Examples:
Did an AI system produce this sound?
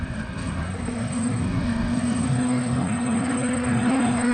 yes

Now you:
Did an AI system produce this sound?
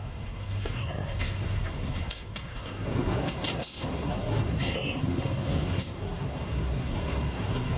yes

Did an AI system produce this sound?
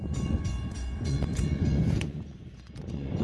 yes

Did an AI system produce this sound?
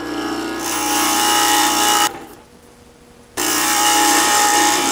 yes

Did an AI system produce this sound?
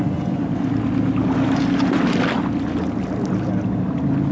no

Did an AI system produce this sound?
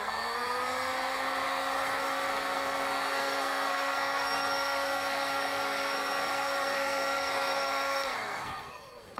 yes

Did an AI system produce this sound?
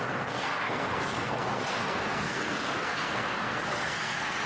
yes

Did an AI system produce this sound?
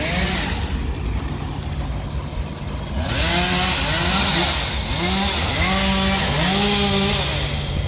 no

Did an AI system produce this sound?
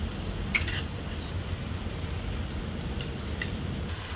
no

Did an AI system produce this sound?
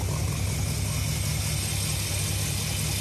no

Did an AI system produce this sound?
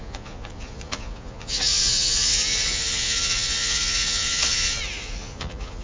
yes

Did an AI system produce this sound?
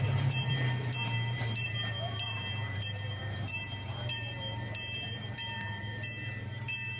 yes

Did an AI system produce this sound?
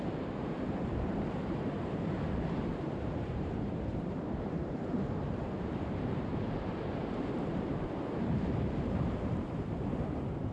yes